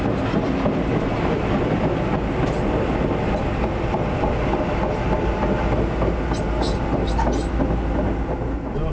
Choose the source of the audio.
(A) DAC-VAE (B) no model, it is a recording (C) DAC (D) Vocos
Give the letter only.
B